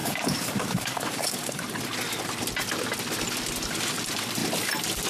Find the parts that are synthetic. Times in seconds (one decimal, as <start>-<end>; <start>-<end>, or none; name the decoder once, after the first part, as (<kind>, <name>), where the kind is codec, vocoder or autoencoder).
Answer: 0.0-1.6 (codec, DAC)

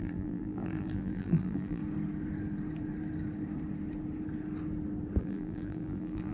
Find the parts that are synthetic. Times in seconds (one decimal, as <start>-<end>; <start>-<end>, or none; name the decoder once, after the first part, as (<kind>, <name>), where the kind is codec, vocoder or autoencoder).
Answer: 0.0-1.8 (vocoder, BigVGAN v2); 5.2-6.3